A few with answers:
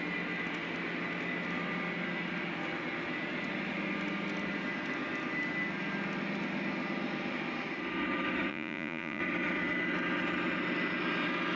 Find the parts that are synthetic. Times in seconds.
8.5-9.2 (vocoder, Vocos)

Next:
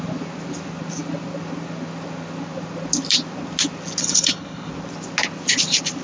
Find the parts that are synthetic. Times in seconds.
4.0-4.7 (codec, HILCodec)